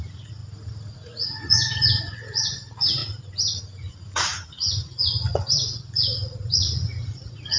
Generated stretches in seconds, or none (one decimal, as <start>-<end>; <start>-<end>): 0.0-0.4; 0.9-3.0; 3.6-7.6